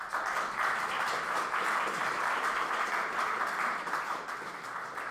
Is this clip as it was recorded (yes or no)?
yes